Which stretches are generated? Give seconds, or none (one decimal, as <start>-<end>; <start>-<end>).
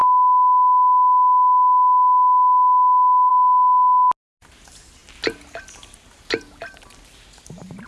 none